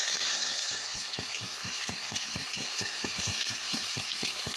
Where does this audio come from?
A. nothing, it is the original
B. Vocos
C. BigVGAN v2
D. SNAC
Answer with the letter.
D